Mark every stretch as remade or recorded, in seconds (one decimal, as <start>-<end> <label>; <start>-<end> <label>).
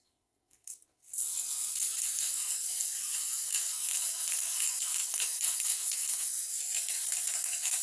0.0-7.8 remade